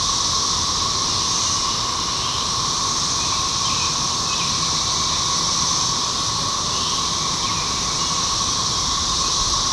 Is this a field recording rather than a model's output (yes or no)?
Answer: yes